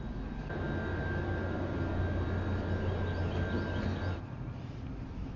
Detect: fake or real real